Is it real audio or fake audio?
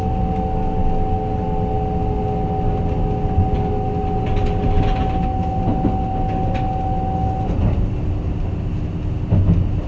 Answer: real